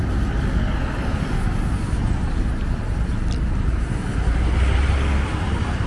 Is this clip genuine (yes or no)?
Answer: yes